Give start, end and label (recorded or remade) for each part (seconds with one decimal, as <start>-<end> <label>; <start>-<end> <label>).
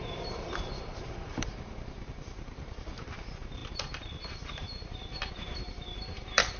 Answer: 0.0-6.6 remade